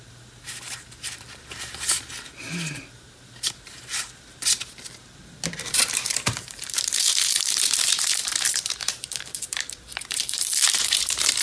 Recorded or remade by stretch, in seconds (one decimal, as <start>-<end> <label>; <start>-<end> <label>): 0.0-3.9 remade; 3.9-5.7 recorded; 5.7-11.4 remade